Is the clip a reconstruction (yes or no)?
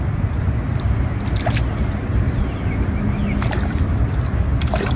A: no